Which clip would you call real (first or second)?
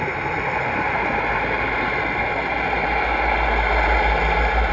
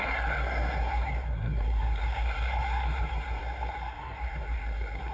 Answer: first